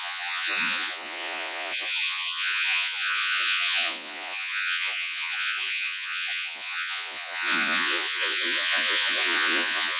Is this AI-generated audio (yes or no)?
yes